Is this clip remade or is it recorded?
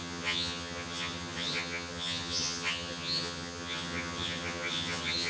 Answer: remade